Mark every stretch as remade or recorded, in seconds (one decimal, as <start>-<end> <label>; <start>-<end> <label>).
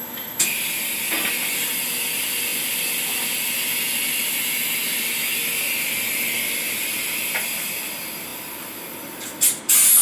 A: 0.0-10.0 recorded